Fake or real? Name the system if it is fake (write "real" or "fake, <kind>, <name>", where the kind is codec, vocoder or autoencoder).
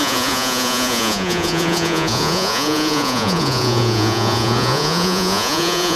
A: fake, vocoder, Vocos